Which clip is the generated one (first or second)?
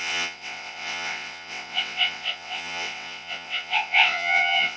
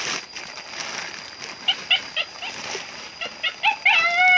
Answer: first